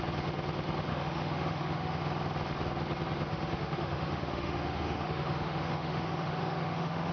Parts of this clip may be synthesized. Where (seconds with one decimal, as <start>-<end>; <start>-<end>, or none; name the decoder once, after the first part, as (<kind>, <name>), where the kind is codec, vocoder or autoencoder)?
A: 0.9-2.0 (autoencoder, DAC-VAE); 3.3-7.1